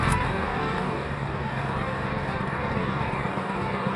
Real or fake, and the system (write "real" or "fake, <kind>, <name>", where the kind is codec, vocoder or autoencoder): fake, codec, DAC